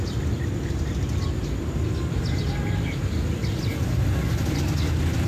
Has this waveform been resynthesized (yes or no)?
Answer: no